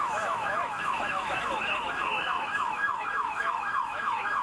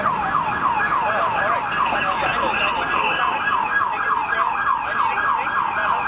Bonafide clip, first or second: second